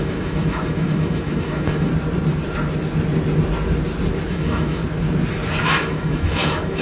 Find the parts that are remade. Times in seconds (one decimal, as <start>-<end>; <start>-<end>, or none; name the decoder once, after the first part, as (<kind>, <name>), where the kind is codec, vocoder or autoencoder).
0.0-1.9 (autoencoder, DAC-VAE); 4.3-4.8; 5.6-6.8